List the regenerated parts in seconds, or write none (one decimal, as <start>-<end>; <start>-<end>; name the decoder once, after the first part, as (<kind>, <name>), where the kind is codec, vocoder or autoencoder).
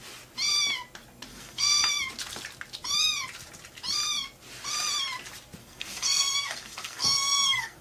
1.3-1.8 (codec, SNAC); 5.6-7.8